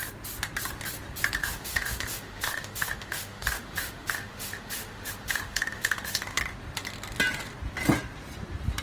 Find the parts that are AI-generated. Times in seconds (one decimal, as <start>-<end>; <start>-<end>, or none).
1.4-6.4